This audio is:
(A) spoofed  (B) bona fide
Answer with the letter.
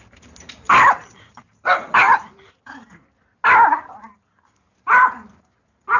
B